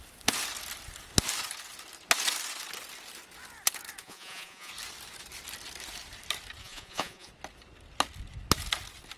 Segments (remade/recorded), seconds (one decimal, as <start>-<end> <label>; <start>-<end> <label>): 0.0-4.0 recorded; 4.0-4.7 remade; 4.7-6.6 recorded; 6.6-7.3 remade; 7.3-9.2 recorded